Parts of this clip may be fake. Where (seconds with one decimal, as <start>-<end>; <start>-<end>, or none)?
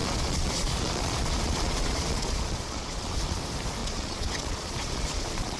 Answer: 0.0-3.4; 3.8-5.6